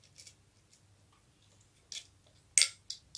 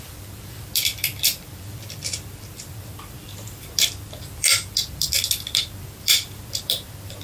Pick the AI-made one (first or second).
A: second